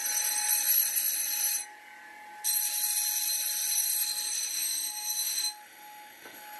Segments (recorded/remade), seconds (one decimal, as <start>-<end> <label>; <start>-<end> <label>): 0.0-4.5 recorded; 4.5-6.6 remade